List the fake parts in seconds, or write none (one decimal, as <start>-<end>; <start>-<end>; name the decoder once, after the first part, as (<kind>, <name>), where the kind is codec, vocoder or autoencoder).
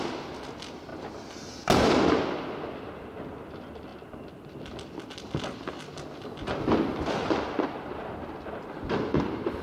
none